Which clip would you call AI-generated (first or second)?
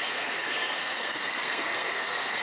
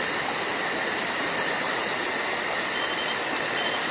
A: first